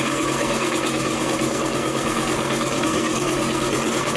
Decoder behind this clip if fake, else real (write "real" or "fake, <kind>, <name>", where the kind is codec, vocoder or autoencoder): fake, codec, SNAC